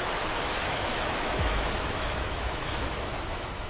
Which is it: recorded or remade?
remade